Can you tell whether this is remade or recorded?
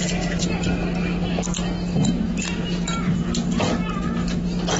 recorded